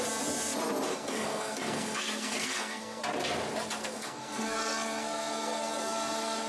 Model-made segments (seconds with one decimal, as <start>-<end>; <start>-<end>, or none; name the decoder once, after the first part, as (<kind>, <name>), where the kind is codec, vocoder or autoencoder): 0.9-3.0 (codec, SNAC); 3.8-6.5